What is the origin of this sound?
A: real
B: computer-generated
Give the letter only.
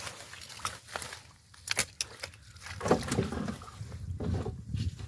A